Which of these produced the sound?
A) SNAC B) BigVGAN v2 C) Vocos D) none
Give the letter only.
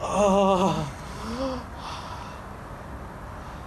D